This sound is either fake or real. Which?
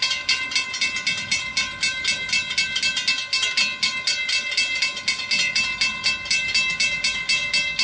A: real